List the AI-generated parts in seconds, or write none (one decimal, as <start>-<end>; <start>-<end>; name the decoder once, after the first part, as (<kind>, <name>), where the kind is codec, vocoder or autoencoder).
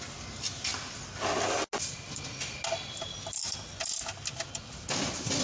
none